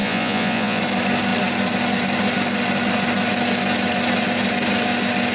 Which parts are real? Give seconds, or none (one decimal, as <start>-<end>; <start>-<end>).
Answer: 0.8-5.3